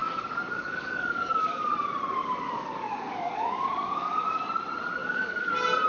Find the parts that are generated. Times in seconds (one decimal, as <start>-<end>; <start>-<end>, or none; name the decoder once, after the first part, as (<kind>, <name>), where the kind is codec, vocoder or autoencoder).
0.0-1.7 (codec, DAC); 2.2-4.5; 5.0-5.5